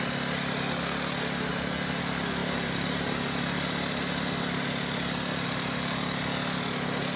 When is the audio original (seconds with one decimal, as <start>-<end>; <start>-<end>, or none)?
0.0-1.5; 2.0-7.2